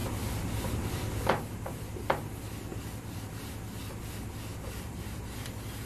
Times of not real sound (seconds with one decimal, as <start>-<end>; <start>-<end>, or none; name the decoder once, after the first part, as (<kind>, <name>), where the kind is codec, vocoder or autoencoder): 0.0-1.3 (vocoder, BigVGAN v2); 2.7-3.2; 4.5-5.5